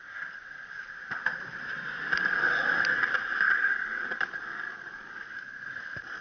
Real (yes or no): yes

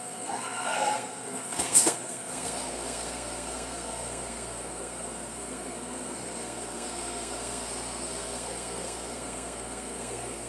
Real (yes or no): no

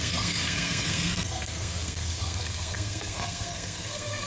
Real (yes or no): no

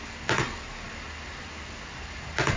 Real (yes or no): yes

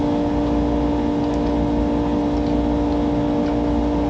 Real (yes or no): yes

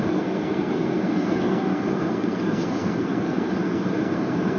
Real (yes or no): no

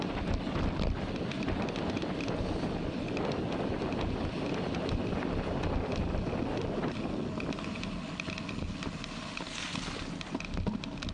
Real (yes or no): yes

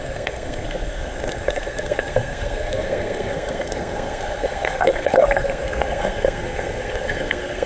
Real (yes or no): no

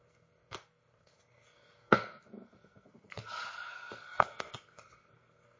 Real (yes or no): no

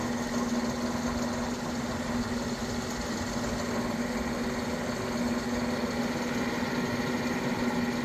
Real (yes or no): yes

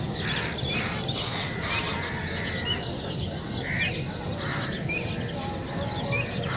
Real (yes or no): yes